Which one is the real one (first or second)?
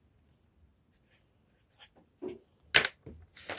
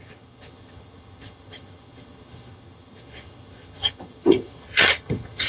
first